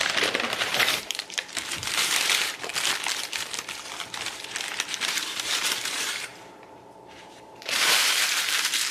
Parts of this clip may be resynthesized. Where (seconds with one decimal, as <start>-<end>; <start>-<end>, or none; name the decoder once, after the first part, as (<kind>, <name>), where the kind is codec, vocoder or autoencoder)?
0.0-2.7 (vocoder, BigVGAN v2); 5.1-8.9